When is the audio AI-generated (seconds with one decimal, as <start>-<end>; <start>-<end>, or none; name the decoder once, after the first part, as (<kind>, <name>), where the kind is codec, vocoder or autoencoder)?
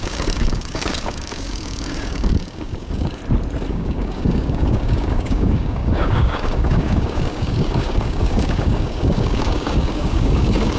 0.0-3.2 (codec, DAC); 3.7-10.8